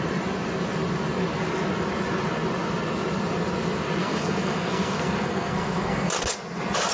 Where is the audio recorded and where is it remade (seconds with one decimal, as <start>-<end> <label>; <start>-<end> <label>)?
0.0-4.0 recorded; 4.0-6.1 remade; 6.1-6.9 recorded